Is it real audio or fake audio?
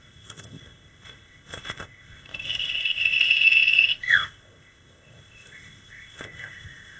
fake